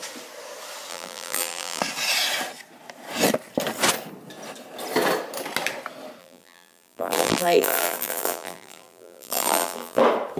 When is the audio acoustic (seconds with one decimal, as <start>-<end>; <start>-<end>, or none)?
0.0-0.9; 1.8-6.2; 10.0-10.4